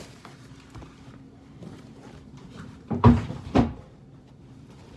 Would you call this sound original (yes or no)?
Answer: no